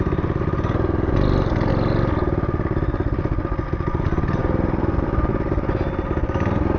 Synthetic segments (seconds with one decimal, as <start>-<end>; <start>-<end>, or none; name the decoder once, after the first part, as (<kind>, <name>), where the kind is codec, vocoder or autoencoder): none